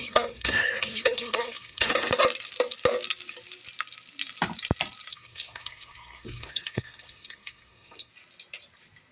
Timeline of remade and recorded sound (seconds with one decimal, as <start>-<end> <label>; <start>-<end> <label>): 0.0-1.9 remade; 1.9-5.1 recorded; 5.1-8.1 remade; 8.1-9.1 recorded